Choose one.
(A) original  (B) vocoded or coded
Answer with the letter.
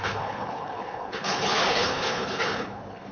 B